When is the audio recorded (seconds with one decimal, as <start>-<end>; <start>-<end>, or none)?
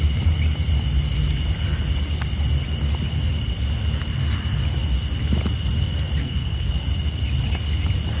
0.0-6.2; 6.7-8.2